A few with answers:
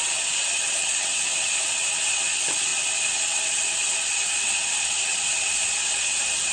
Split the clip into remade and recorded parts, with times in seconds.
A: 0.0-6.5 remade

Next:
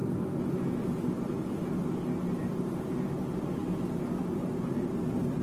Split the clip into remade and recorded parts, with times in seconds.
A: 0.0-5.4 recorded

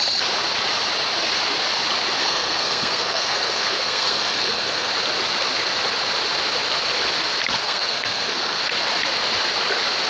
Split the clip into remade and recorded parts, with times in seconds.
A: 0.0-2.2 recorded; 2.2-4.9 remade; 4.9-7.6 recorded; 7.6-8.6 remade; 8.6-10.1 recorded

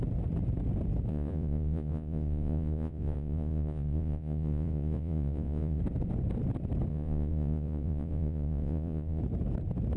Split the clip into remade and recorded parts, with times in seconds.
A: 0.0-1.1 recorded; 1.1-5.8 remade; 5.8-6.9 recorded; 6.9-9.2 remade; 9.2-10.0 recorded

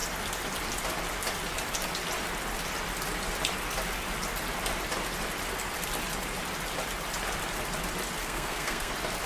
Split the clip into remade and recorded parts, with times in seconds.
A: 0.0-8.2 recorded; 8.2-8.9 remade; 8.9-9.3 recorded

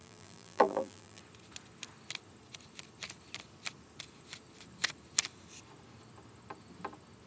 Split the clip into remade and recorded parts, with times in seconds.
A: 0.0-1.2 remade; 1.2-7.3 recorded

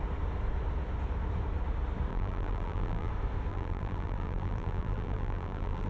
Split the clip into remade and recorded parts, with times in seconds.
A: 0.0-2.1 recorded; 2.1-3.1 remade; 3.1-3.5 recorded; 3.5-5.9 remade